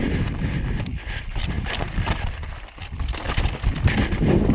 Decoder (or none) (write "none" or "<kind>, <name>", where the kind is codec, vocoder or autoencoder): none